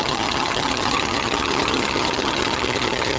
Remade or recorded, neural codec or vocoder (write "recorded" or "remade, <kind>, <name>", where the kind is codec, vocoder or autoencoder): remade, vocoder, HiFi-GAN